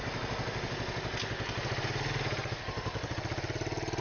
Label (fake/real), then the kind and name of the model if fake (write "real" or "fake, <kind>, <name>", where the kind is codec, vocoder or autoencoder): real